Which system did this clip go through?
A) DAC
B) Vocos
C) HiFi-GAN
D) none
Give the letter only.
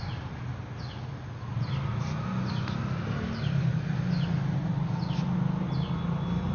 D